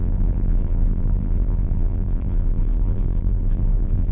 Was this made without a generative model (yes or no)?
no